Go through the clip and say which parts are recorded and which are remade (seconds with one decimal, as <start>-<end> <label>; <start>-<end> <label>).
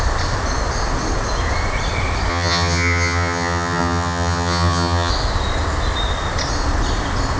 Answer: 0.0-2.3 recorded; 2.3-5.1 remade; 5.1-7.4 recorded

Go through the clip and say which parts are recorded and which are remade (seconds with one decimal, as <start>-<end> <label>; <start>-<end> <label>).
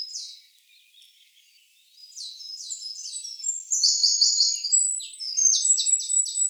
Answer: 0.0-2.0 recorded; 2.0-2.6 remade; 2.6-6.5 recorded